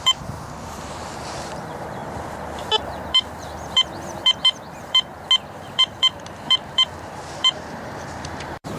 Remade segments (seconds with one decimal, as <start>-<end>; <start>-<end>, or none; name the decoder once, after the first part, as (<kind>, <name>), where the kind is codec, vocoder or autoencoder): 0.0-2.0 (vocoder, BigVGAN v2); 2.6-5.1; 5.7-8.8